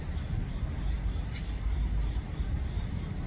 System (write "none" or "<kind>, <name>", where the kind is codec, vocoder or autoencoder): none